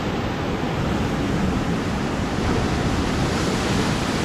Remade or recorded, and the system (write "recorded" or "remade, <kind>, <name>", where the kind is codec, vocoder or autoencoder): recorded